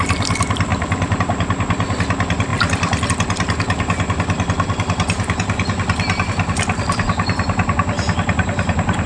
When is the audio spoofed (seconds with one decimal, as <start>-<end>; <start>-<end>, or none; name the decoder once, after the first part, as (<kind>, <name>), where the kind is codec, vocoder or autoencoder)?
0.7-1.2 (vocoder, BigVGAN v2); 2.5-3.1

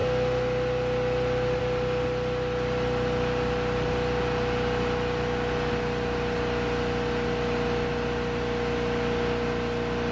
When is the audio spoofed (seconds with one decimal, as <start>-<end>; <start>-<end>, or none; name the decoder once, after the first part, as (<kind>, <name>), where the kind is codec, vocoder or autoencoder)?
none

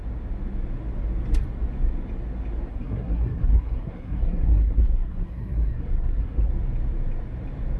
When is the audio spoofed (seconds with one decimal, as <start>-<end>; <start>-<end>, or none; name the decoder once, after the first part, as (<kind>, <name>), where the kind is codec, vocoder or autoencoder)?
2.7-6.5 (codec, SNAC)